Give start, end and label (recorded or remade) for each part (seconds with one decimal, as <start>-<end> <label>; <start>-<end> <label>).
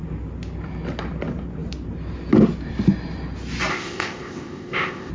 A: 0.0-3.7 recorded; 3.7-5.1 remade